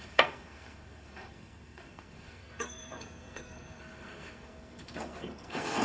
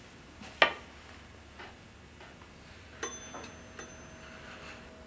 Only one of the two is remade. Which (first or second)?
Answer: first